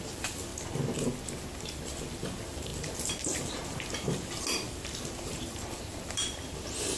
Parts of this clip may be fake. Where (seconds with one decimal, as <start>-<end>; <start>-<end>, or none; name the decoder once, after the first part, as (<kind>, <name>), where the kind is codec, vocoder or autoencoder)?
0.0-0.5 (vocoder, BigVGAN v2); 2.0-7.0